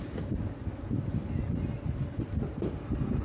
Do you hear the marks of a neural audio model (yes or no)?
no